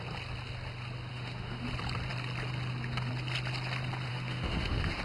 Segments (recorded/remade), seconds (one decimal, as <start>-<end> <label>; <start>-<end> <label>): 0.0-1.1 recorded; 1.1-1.7 remade; 1.7-4.1 recorded; 4.1-5.0 remade